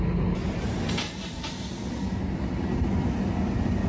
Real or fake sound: real